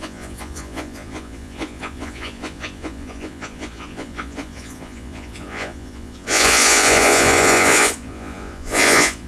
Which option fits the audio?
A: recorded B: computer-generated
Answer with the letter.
B